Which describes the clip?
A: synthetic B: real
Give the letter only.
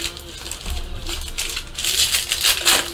B